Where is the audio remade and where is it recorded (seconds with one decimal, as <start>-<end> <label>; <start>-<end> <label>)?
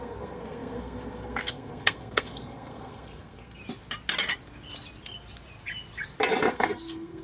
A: 0.0-3.6 remade; 3.6-6.5 recorded; 6.5-7.2 remade